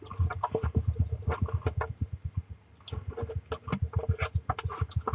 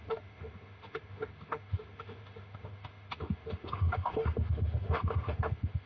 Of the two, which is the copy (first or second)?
second